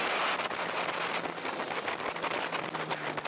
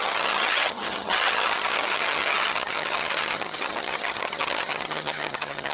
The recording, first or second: first